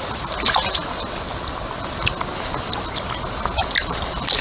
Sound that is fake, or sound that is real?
real